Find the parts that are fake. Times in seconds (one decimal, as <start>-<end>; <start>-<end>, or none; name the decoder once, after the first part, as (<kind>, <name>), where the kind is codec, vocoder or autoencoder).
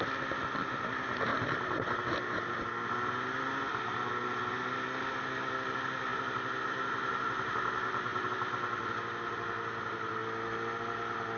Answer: none